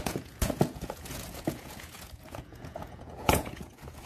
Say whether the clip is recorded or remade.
remade